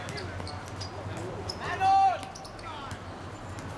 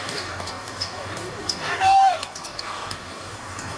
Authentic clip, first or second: first